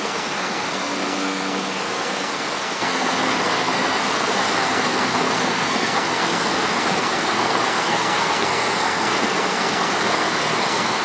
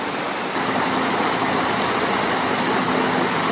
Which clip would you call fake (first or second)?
first